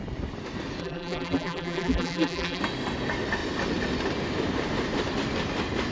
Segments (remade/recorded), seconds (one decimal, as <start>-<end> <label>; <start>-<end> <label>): 0.0-0.8 recorded; 0.8-2.6 remade; 2.6-5.9 recorded